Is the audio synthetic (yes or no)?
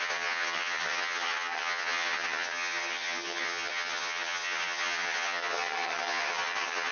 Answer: yes